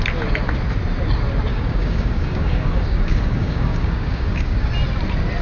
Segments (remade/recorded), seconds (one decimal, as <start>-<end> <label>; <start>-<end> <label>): 0.0-1.5 recorded; 1.5-4.7 remade; 4.7-5.4 recorded